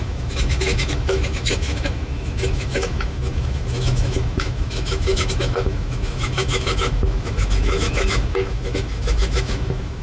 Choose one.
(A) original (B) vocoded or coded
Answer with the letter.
B